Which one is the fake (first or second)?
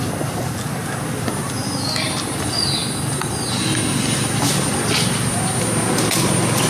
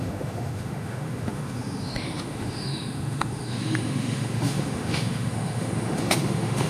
second